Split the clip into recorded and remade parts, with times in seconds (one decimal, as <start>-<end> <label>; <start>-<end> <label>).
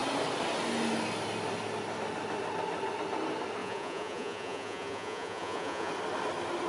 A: 0.0-3.6 recorded; 3.6-5.9 remade; 5.9-6.7 recorded